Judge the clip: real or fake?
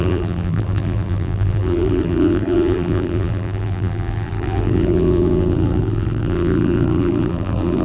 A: fake